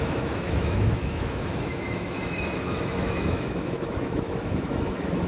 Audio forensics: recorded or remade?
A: remade